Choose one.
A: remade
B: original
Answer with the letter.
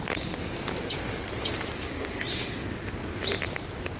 B